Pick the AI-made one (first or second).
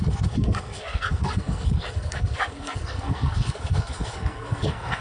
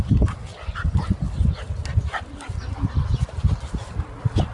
first